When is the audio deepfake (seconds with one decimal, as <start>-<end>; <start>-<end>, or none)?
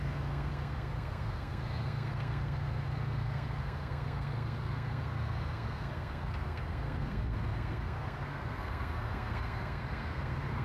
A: 0.0-10.6